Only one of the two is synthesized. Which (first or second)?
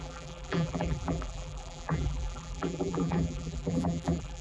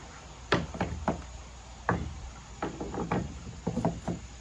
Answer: first